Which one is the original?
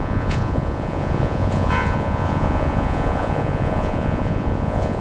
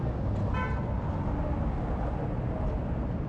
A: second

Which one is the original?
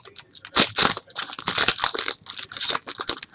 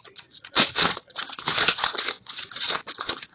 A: first